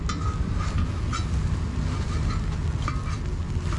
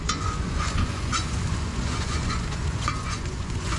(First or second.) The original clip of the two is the first